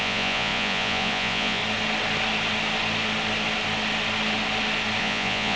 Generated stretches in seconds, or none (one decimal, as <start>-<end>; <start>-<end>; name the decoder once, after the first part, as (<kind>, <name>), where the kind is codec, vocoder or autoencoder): 0.0-1.6 (vocoder, Vocos); 5.0-5.6